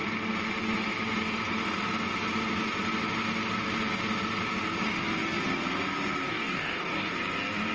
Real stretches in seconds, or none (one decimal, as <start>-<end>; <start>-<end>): 0.0-6.3; 7.1-7.7